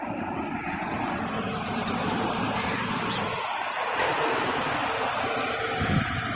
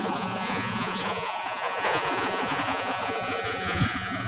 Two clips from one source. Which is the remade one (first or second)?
second